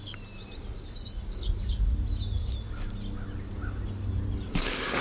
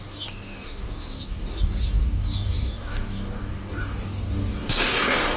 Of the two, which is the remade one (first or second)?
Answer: second